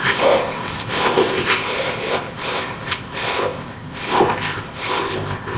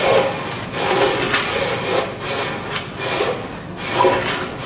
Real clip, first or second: second